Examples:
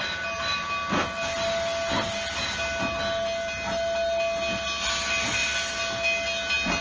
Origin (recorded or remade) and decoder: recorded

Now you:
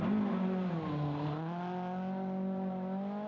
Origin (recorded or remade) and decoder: recorded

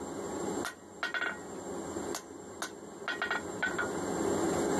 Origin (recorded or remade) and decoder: recorded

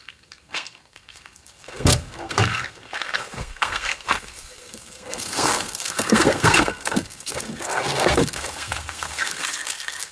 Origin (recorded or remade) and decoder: remade, codec, SNAC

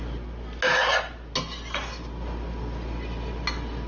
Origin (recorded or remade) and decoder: recorded